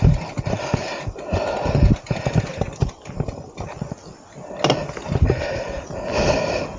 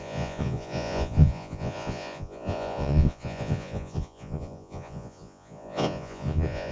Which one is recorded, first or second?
first